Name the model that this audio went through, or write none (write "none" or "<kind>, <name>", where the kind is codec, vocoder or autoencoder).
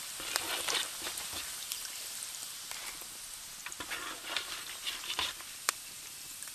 none